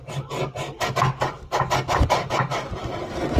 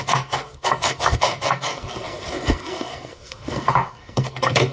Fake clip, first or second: second